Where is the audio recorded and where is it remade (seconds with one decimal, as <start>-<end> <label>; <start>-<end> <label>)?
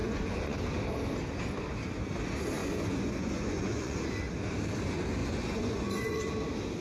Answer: 0.0-0.6 remade; 0.6-2.6 recorded; 2.6-4.2 remade; 4.2-5.2 recorded; 5.2-6.3 remade; 6.3-6.8 recorded